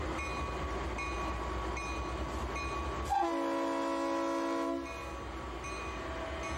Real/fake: real